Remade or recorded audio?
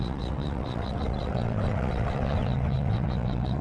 remade